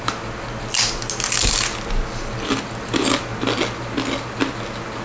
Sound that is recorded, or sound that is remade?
recorded